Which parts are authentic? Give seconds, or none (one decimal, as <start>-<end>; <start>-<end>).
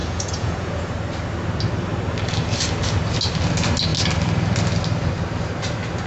0.9-6.1